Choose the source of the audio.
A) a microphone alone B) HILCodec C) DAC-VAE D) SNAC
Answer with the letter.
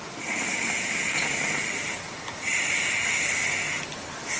A